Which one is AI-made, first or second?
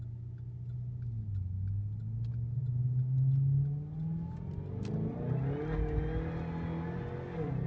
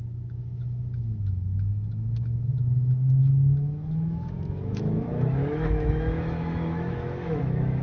second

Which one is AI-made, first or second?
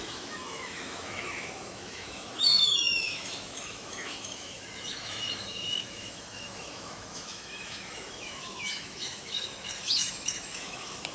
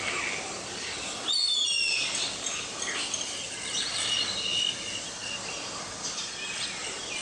first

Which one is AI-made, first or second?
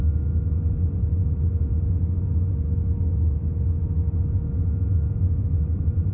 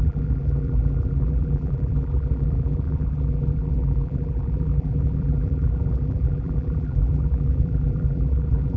second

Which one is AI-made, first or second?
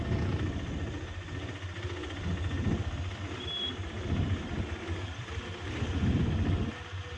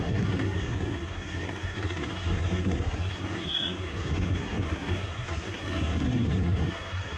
second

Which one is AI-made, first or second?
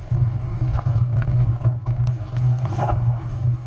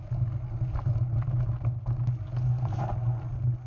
first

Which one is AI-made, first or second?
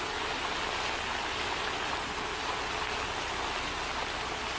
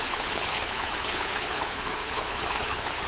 second